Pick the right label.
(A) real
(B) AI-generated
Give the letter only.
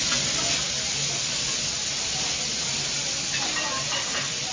A